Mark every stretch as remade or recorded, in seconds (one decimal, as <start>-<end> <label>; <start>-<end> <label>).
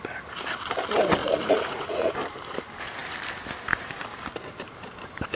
0.0-1.2 recorded; 1.2-2.1 remade; 2.1-5.4 recorded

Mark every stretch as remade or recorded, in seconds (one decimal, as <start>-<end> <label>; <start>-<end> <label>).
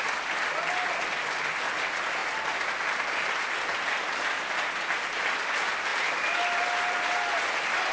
0.0-7.9 recorded